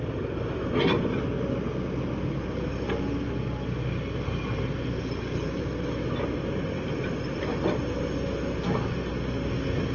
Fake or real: real